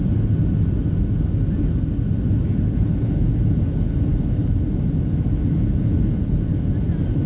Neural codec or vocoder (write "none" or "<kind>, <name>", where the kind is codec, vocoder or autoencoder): none